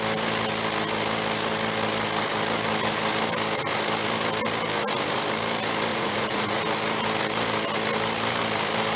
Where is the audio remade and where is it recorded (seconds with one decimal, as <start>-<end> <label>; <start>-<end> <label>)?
0.0-5.9 recorded; 5.9-6.6 remade; 6.6-9.0 recorded